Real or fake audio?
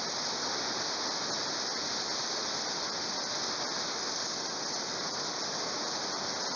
real